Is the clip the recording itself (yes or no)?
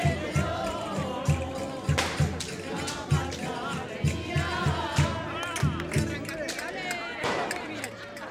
yes